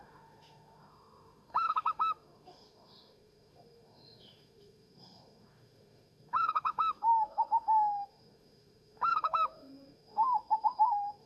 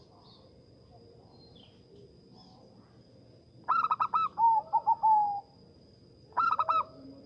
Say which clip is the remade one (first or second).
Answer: first